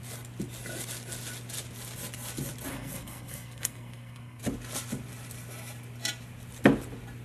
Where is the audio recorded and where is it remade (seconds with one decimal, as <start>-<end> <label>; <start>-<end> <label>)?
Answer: 0.0-2.7 recorded; 2.7-4.4 remade; 4.4-7.2 recorded